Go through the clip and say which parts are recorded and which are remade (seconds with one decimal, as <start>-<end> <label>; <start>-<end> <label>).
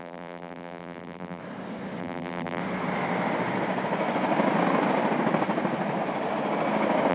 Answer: 0.0-1.4 remade; 1.4-2.0 recorded; 2.0-2.6 remade; 2.6-7.1 recorded